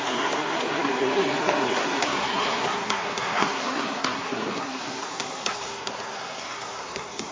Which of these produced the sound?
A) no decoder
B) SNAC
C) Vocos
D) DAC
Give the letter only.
B